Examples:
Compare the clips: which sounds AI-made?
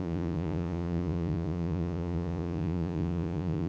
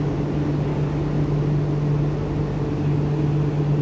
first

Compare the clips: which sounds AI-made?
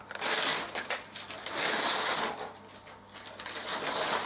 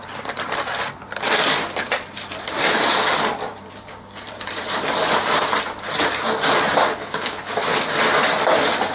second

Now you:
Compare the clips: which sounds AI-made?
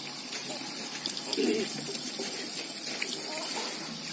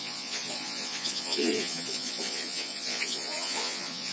second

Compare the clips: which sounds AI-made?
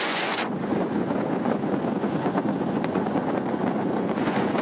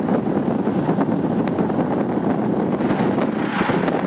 first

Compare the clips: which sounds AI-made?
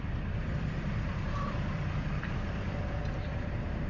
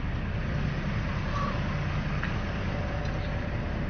first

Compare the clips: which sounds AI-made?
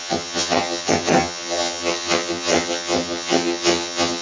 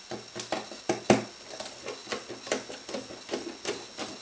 first